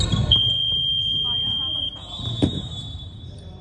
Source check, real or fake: fake